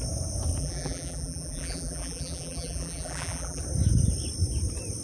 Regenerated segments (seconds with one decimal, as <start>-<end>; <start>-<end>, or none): 0.6-3.6